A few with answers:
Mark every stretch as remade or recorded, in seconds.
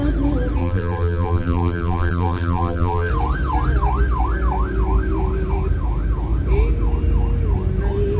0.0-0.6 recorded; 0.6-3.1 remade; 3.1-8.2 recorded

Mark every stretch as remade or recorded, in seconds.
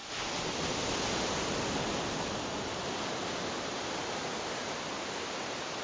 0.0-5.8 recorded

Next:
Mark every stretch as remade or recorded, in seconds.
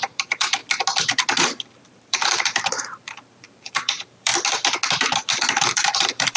0.0-0.6 remade; 0.6-1.8 recorded; 1.8-4.3 remade; 4.3-5.5 recorded; 5.5-6.4 remade